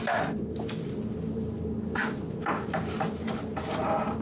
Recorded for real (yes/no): yes